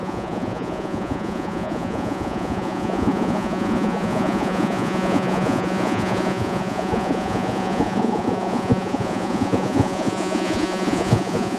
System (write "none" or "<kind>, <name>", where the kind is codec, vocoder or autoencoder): vocoder, Vocos